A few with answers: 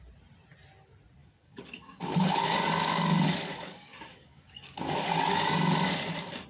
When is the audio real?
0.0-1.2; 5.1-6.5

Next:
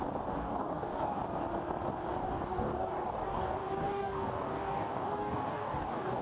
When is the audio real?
0.0-0.4; 1.2-2.2